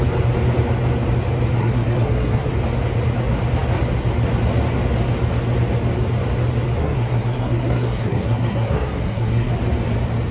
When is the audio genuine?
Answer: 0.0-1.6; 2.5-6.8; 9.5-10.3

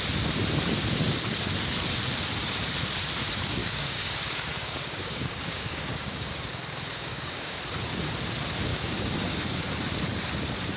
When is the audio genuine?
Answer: 0.0-3.6; 7.6-8.7; 9.4-10.8